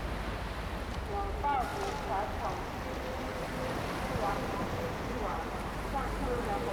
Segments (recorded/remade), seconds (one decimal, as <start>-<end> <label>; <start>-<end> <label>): 0.0-3.3 recorded; 3.3-6.7 remade